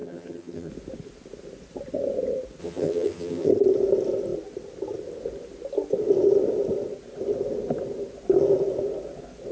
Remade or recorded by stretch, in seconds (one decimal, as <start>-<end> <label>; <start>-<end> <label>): 0.0-0.7 remade; 0.7-2.6 recorded; 2.6-3.5 remade; 3.5-9.5 recorded